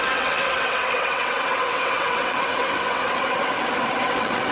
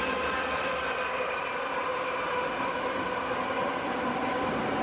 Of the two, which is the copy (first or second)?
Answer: first